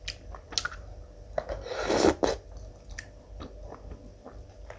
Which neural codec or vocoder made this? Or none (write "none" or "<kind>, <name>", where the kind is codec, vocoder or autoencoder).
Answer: none